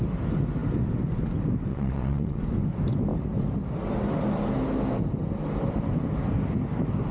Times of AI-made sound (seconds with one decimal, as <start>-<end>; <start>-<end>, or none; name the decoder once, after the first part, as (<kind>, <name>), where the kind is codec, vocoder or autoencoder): 1.7-2.4 (vocoder, Vocos)